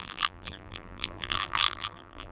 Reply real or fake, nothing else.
fake